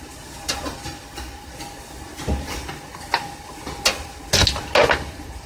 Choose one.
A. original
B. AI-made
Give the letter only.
A